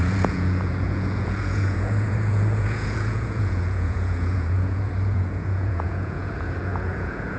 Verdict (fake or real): fake